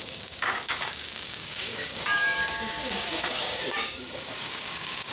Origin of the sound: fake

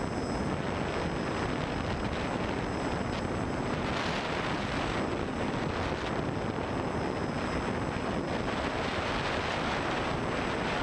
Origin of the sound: real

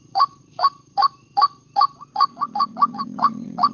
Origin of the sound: fake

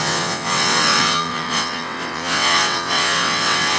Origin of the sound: fake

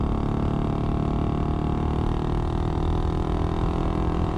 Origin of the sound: real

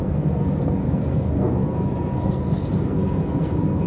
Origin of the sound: fake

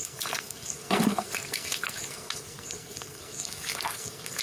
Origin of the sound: fake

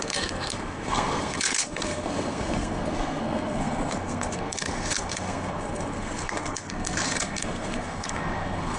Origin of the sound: fake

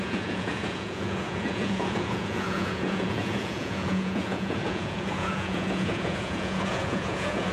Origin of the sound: fake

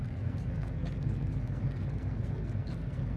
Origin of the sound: fake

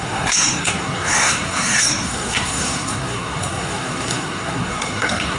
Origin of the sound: fake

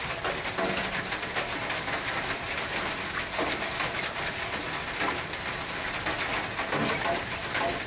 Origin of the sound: real